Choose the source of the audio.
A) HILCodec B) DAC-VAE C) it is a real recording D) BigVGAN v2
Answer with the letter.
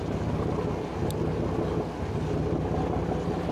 C